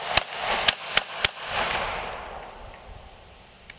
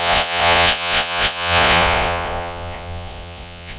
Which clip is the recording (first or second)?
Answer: first